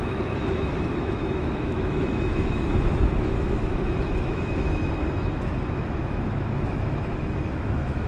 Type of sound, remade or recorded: remade